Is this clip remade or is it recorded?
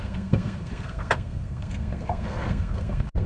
remade